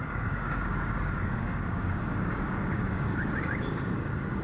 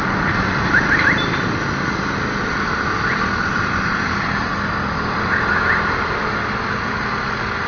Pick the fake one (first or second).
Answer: first